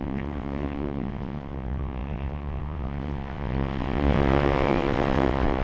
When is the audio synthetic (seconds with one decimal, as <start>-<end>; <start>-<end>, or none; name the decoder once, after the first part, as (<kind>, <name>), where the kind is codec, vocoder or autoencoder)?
0.0-5.6 (vocoder, WaveNeXt)